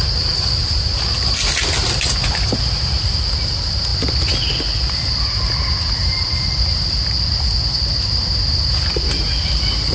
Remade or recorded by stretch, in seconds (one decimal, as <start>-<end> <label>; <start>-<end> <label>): 0.0-9.9 recorded